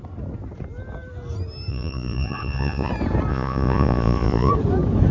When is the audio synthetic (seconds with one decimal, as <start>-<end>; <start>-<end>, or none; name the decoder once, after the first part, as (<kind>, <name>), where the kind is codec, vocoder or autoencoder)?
1.7-2.9 (vocoder, Vocos); 3.3-4.5